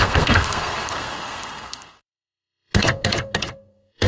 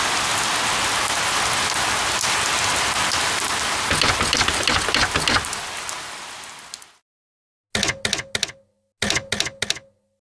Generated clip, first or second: first